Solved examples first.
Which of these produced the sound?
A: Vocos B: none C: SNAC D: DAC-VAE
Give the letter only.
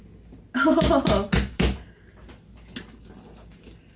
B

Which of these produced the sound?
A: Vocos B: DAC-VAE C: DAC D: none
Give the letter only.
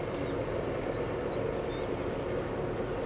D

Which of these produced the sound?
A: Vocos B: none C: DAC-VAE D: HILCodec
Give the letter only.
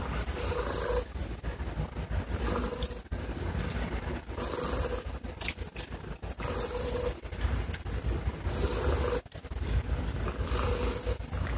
B